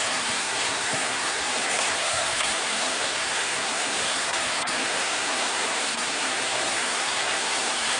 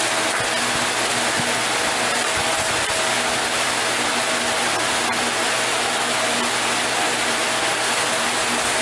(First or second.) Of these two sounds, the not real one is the first